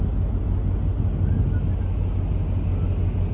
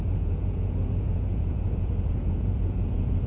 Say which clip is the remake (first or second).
second